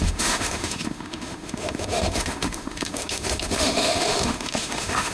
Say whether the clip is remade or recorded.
remade